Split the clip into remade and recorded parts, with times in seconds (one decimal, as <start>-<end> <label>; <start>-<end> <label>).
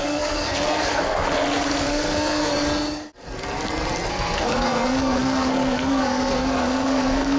0.0-1.2 remade; 1.2-1.8 recorded; 1.8-2.5 remade; 2.5-4.1 recorded; 4.1-7.4 remade